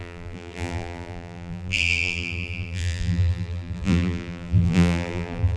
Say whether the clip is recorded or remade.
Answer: remade